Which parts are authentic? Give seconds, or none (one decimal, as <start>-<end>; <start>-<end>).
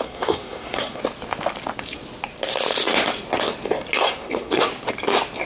1.0-4.0; 4.7-5.5